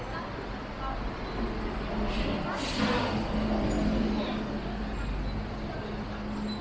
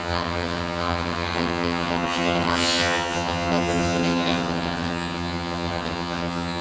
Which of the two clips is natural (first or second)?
first